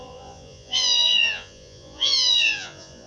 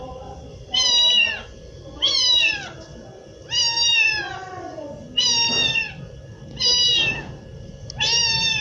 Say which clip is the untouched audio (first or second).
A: second